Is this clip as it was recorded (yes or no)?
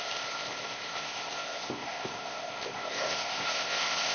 no